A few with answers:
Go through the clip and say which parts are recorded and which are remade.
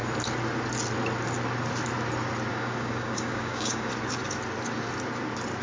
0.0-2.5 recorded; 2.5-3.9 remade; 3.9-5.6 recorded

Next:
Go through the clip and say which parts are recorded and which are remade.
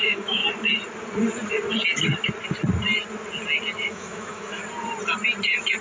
0.0-0.4 remade; 0.4-3.9 recorded; 3.9-4.6 remade; 4.6-5.8 recorded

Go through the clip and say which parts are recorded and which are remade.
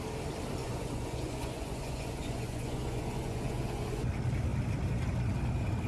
0.0-0.6 recorded; 0.6-4.1 remade; 4.1-5.9 recorded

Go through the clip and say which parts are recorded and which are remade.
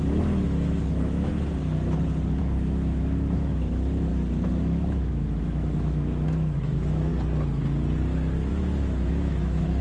0.0-1.3 remade; 1.3-2.4 recorded; 2.4-4.1 remade; 4.1-4.6 recorded; 4.6-7.1 remade; 7.1-8.5 recorded; 8.5-9.8 remade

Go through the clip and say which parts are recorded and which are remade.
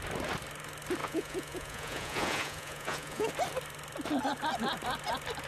0.0-1.0 recorded; 1.0-3.3 remade; 3.3-5.5 recorded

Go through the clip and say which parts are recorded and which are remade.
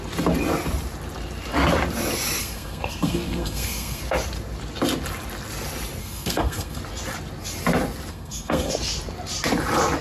0.0-2.4 recorded; 2.4-4.0 remade; 4.0-6.0 recorded; 6.0-6.8 remade; 6.8-8.1 recorded; 8.1-8.7 remade; 8.7-10.0 recorded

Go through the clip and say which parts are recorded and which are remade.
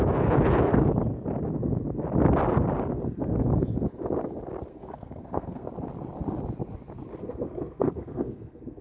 0.0-4.7 recorded; 4.7-5.7 remade; 5.7-7.2 recorded; 7.2-8.8 remade